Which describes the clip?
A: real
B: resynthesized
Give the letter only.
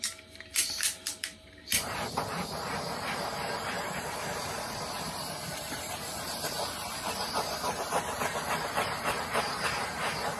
B